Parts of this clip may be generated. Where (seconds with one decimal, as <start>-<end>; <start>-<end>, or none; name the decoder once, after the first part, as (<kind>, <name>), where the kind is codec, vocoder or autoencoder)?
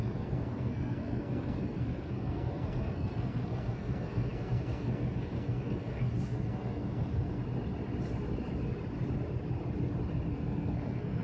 0.0-7.4 (codec, SNAC); 10.3-11.2